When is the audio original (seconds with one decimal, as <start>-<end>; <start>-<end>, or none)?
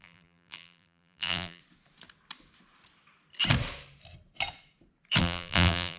1.6-5.2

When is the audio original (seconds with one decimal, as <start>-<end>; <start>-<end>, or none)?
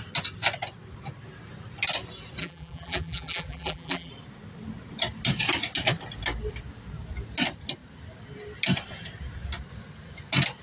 0.0-2.4; 4.1-10.6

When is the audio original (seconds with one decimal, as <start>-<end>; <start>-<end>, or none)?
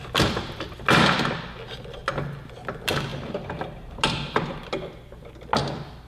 0.0-6.1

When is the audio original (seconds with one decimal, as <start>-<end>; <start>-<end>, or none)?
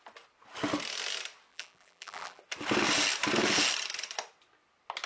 0.0-1.5; 2.4-5.1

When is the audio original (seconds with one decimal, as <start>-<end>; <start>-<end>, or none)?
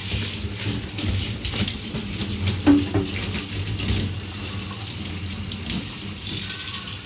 0.0-0.9; 2.2-4.9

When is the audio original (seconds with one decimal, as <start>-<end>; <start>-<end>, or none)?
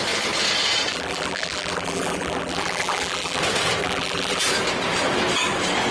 0.0-0.9; 3.4-3.8; 4.4-5.9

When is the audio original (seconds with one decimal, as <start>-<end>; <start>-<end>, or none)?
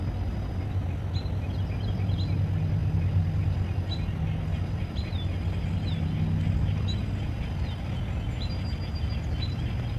0.0-10.0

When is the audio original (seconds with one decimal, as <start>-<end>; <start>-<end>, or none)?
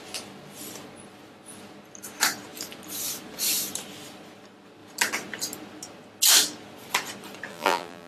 0.0-7.5